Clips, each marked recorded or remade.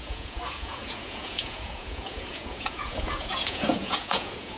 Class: remade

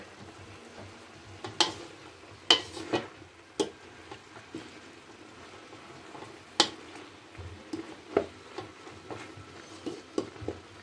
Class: recorded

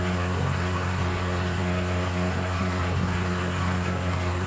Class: remade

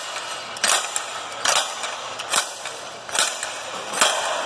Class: recorded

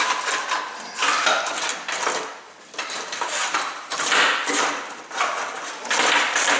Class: recorded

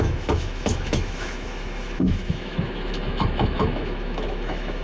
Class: remade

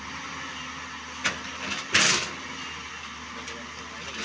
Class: recorded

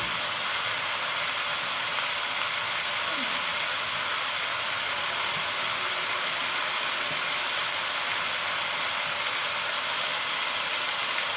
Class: recorded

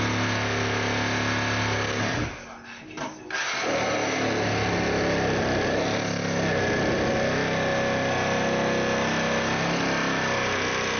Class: recorded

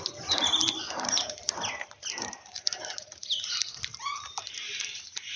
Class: remade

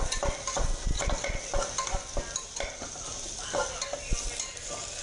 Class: recorded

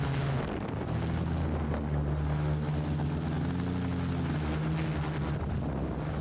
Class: recorded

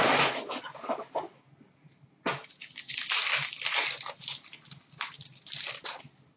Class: recorded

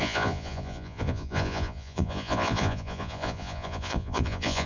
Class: remade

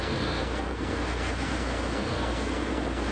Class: remade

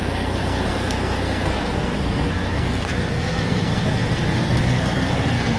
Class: remade